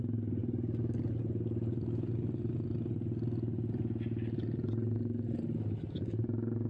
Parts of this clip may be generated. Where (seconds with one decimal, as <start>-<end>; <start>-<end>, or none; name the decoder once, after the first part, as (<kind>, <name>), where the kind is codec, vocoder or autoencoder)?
none